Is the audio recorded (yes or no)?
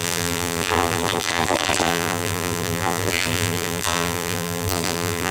no